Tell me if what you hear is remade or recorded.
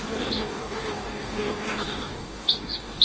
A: remade